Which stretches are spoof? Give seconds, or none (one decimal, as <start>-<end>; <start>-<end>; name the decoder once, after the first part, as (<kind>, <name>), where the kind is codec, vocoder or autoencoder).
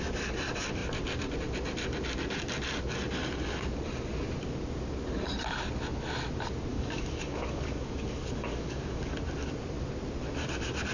6.7-9.1 (codec, DAC)